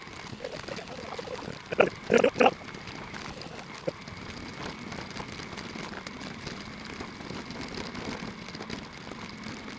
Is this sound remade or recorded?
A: recorded